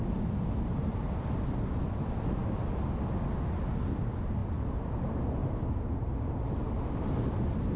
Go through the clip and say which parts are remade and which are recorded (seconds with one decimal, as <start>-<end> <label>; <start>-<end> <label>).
0.0-5.4 recorded; 5.4-6.0 remade; 6.0-7.8 recorded

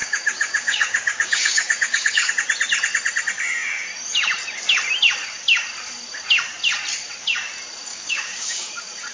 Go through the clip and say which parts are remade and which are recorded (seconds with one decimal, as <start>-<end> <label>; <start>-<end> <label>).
0.0-2.3 remade; 2.3-7.9 recorded; 7.9-8.7 remade; 8.7-9.1 recorded

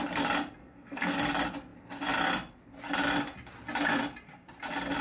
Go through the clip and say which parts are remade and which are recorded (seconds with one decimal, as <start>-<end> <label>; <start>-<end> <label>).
0.0-0.6 recorded; 0.6-1.2 remade; 1.2-5.0 recorded